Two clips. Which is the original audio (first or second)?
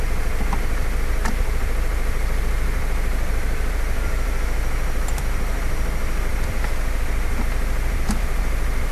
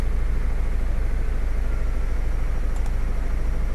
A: second